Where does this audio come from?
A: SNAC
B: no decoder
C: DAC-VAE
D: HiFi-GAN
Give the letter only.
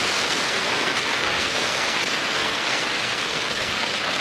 A